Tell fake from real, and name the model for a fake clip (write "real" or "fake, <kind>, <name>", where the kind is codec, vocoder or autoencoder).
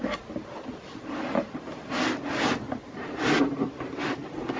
real